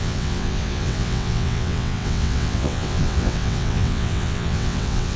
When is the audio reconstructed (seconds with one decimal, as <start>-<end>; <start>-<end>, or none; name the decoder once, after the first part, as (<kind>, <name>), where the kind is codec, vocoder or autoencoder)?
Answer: 0.0-5.2 (vocoder, WaveNeXt)